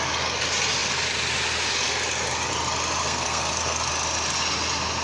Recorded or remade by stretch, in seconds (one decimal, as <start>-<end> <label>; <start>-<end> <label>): 0.0-3.0 recorded; 3.0-3.9 remade; 3.9-5.0 recorded